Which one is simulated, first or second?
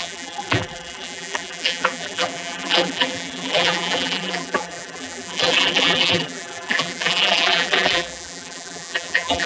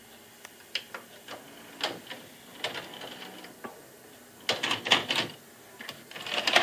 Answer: first